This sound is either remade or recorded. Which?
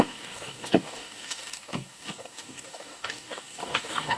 remade